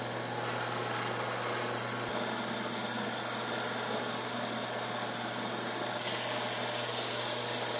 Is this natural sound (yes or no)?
yes